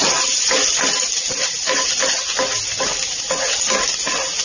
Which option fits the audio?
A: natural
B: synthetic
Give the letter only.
A